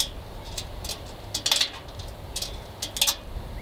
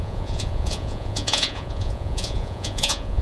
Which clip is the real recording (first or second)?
first